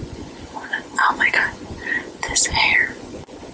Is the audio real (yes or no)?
no